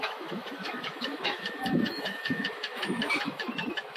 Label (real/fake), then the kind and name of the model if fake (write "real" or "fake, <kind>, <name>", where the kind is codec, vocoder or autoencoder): fake, autoencoder, DAC-VAE